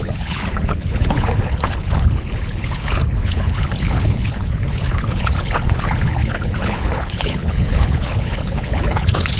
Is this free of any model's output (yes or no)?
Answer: no